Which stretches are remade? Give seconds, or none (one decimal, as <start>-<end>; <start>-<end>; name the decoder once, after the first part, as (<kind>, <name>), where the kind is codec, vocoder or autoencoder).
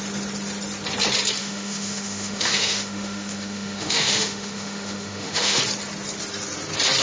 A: 1.4-5.6 (autoencoder, DAC-VAE)